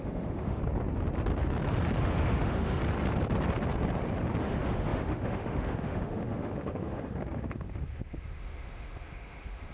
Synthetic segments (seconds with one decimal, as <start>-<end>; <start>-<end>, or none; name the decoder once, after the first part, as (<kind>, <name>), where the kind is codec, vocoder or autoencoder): 0.0-0.6 (autoencoder, DAC-VAE); 2.0-2.8; 4.4-9.7